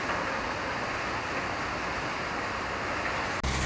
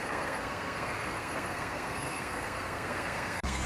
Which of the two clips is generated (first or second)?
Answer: second